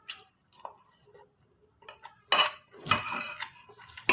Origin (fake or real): real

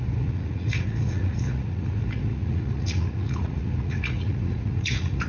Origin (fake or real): fake